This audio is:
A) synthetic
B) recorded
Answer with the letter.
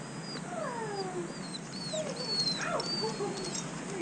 B